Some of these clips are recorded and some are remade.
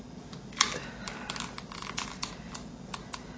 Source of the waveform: recorded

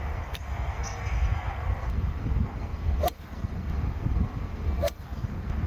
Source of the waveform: remade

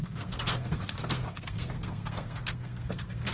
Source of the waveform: remade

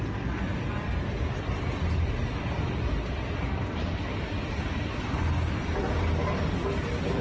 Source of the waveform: recorded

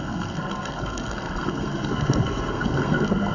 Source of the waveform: remade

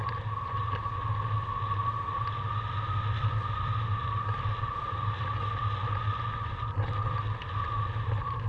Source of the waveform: recorded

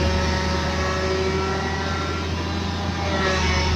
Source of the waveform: recorded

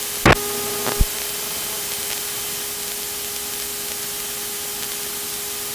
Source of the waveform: recorded